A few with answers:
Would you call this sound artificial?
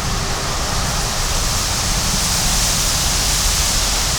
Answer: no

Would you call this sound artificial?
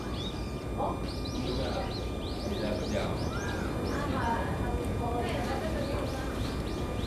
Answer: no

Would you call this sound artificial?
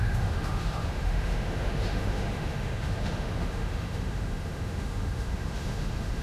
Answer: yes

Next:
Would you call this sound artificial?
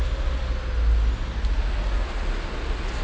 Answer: no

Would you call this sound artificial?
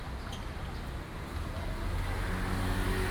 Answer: no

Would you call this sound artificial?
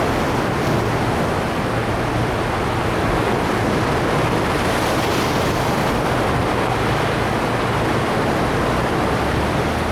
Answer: no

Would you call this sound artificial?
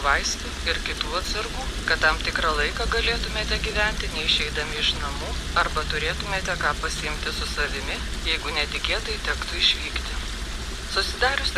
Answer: no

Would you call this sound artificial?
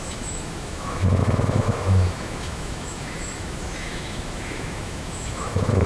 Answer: yes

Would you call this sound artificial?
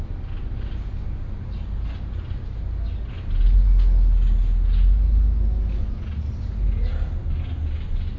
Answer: no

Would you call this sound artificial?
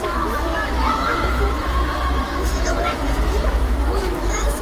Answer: yes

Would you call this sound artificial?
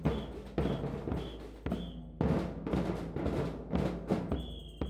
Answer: no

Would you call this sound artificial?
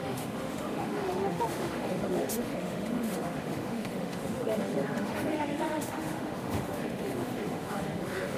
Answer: yes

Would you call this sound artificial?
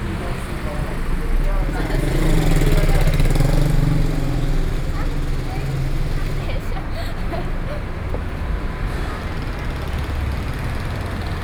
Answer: no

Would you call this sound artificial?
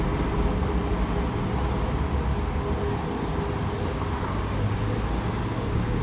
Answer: no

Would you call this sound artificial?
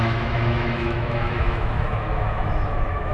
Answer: yes